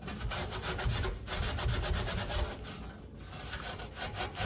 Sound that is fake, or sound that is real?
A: real